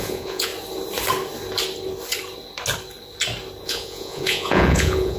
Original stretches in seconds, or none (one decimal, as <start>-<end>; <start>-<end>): 0.5-3.6